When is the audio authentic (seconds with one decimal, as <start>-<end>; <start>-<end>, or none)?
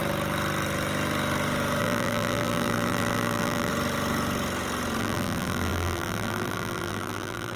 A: 0.0-1.8; 3.7-5.0